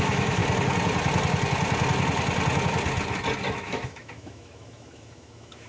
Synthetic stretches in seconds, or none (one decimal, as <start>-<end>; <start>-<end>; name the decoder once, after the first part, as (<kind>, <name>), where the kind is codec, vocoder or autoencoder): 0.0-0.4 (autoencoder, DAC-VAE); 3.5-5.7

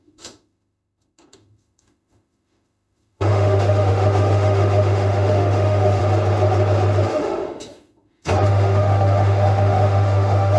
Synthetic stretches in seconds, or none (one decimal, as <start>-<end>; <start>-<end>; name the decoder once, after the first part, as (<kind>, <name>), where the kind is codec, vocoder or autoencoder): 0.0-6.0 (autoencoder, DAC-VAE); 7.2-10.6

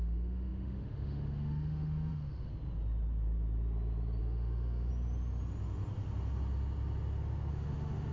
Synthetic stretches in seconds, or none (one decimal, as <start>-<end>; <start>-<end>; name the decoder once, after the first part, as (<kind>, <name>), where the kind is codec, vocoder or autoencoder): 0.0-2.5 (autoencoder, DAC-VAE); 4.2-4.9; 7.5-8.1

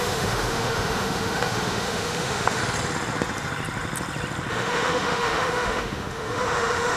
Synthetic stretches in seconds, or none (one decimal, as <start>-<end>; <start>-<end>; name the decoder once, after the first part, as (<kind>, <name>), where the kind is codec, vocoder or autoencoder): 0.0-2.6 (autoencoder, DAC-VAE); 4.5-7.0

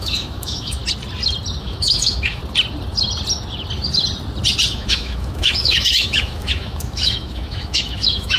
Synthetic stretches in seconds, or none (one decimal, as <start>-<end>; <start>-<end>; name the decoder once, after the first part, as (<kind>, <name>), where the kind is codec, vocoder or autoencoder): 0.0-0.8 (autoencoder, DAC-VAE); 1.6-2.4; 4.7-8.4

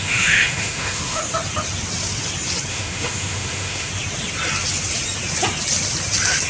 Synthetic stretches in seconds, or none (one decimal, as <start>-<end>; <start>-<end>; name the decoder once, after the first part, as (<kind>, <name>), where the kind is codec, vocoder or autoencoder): 0.0-1.2 (autoencoder, DAC-VAE); 2.7-3.9

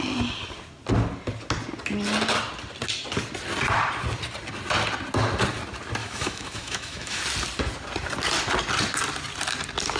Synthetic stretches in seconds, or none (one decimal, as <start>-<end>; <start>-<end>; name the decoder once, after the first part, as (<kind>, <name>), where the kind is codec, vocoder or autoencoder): 6.0-7.2 (autoencoder, DAC-VAE)